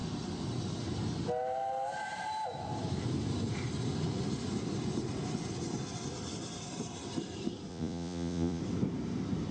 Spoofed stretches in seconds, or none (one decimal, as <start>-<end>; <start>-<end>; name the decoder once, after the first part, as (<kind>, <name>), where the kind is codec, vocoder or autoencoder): 7.7-8.6 (vocoder, Vocos)